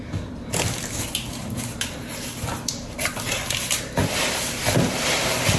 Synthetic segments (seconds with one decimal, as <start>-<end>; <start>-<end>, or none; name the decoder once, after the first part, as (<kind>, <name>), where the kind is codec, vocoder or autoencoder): none